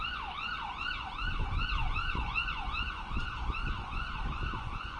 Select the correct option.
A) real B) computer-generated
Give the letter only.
B